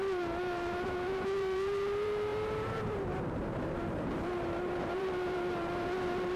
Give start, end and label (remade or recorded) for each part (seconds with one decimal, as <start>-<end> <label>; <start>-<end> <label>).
0.0-6.4 remade